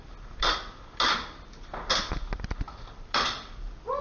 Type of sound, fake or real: real